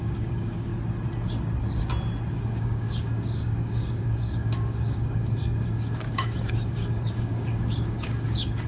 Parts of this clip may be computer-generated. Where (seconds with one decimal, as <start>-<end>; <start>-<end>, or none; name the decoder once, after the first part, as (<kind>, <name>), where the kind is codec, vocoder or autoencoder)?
0.0-0.7 (codec, DAC); 2.3-8.7